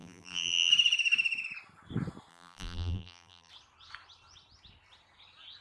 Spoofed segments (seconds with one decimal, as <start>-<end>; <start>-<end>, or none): 0.0-0.7; 2.3-3.5